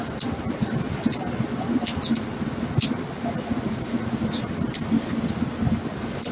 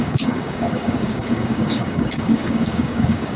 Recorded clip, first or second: first